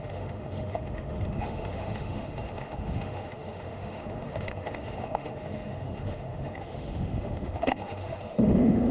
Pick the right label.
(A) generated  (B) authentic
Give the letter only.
A